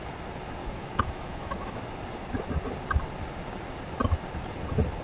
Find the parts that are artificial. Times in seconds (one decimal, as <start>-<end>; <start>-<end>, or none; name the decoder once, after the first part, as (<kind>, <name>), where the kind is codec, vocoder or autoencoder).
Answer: 0.6-1.8 (autoencoder, DAC-VAE)

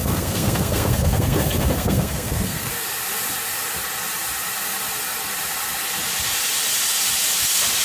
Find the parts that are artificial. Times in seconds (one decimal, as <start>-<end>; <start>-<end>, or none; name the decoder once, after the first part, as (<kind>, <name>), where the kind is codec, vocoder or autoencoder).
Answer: 0.0-2.7 (codec, SNAC)

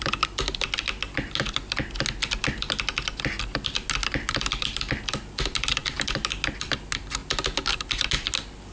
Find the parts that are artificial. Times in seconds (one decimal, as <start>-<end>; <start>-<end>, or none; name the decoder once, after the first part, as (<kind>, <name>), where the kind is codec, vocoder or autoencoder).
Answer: none

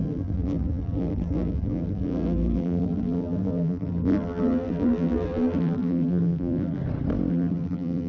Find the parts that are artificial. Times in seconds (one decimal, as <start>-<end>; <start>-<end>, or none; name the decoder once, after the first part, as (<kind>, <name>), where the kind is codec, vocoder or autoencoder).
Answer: 0.0-6.8 (vocoder, BigVGAN v2); 7.3-8.1

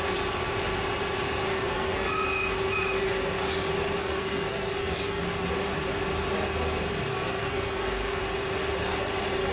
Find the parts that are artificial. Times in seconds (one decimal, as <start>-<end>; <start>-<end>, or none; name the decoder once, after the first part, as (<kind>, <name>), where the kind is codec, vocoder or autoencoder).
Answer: 1.5-2.1 (codec, SNAC); 4.0-5.2; 7.1-8.2

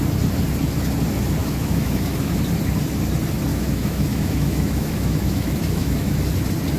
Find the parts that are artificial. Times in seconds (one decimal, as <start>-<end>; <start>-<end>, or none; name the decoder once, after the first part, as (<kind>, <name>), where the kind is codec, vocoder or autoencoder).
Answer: 1.4-2.4 (autoencoder, DAC-VAE); 3.5-6.1

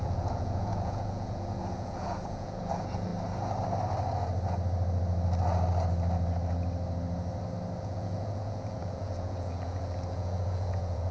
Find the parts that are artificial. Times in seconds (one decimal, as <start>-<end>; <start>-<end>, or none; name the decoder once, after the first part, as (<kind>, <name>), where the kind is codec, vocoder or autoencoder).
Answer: 0.0-3.1 (vocoder, Vocos); 7.8-11.1